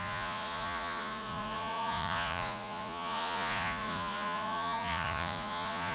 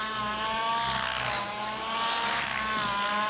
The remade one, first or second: first